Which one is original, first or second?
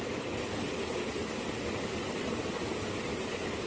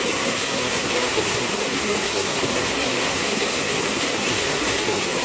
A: first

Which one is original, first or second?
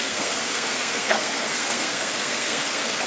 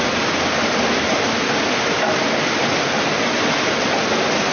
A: second